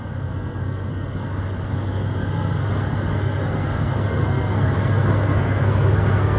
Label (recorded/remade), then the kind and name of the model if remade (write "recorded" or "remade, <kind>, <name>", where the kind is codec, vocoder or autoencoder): remade, codec, SNAC